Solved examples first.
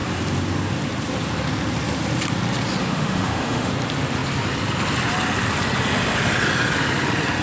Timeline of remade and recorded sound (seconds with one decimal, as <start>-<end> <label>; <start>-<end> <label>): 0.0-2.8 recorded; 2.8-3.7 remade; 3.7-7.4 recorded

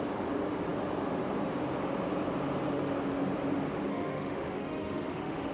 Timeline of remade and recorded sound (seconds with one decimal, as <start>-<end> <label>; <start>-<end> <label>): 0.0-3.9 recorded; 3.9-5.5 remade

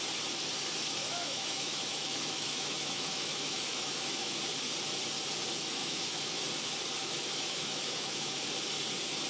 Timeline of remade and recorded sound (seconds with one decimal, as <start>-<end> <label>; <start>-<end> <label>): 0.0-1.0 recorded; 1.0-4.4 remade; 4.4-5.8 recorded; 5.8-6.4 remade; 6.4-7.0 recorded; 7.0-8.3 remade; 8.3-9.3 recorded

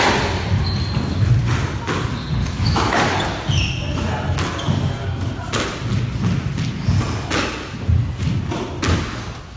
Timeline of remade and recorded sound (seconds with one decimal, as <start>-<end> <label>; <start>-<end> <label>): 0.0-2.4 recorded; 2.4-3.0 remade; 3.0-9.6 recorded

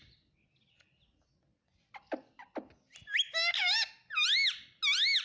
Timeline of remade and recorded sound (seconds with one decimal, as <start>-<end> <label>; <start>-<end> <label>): 0.0-5.2 recorded

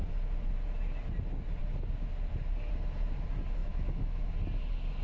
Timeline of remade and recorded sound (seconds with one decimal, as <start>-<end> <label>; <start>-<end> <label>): 0.0-3.6 recorded; 3.6-4.3 remade; 4.3-5.0 recorded

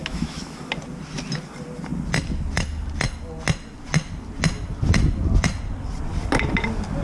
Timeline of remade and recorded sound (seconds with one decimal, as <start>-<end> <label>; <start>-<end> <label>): 0.0-0.7 remade; 0.7-7.0 recorded

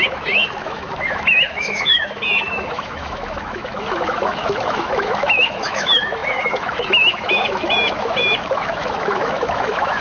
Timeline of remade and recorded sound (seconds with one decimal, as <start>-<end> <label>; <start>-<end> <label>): 0.0-10.0 remade